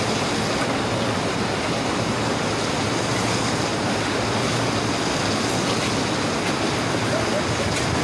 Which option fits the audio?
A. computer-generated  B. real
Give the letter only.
B